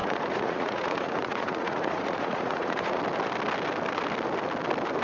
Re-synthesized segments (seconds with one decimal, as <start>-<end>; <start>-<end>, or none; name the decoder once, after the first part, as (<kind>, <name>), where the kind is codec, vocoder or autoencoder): 0.0-3.0 (vocoder, Vocos)